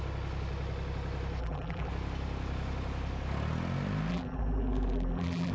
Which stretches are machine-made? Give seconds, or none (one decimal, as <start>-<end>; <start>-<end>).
1.4-1.9; 4.1-5.5